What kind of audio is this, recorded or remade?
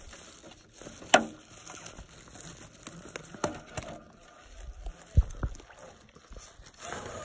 recorded